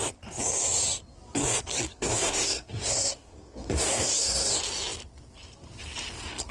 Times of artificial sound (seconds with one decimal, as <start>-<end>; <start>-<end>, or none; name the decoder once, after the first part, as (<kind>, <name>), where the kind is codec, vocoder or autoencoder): 1.9-4.6 (codec, SNAC)